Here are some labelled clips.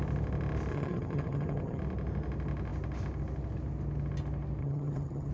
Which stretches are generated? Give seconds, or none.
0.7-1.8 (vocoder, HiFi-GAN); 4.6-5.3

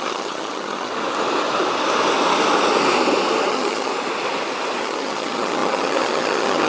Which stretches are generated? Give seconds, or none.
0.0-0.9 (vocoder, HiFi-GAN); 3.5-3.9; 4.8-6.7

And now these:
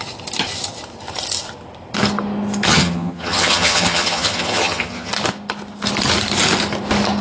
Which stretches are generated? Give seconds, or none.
2.7-5.1 (vocoder, HiFi-GAN)

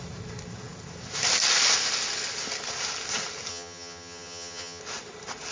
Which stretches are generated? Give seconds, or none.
3.5-4.8 (vocoder, HiFi-GAN)

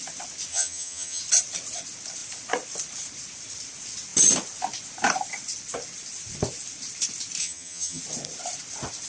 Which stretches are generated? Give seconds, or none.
0.5-1.2 (vocoder, HiFi-GAN); 7.4-8.0